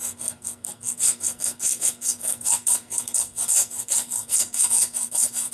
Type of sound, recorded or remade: remade